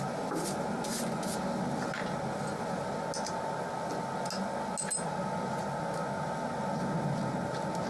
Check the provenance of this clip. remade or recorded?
recorded